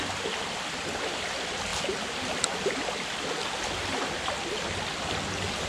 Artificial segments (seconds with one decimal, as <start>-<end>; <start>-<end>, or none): none